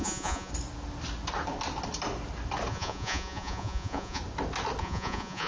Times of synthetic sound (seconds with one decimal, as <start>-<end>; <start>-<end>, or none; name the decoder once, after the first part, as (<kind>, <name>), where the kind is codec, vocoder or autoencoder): 0.0-0.5 (vocoder, Vocos); 2.7-4.2; 4.8-5.5